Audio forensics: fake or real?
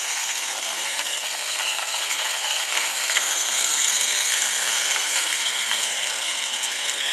fake